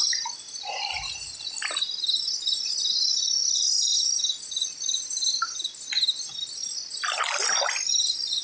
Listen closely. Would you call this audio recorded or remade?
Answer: recorded